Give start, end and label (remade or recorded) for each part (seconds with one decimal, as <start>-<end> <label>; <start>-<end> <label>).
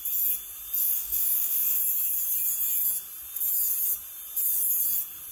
0.0-0.8 recorded; 0.8-1.8 remade; 1.8-5.3 recorded